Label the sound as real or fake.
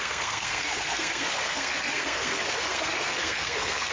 fake